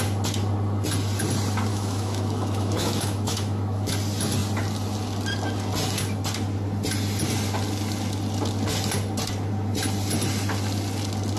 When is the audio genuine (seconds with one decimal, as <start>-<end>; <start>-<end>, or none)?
0.0-1.7; 3.9-11.4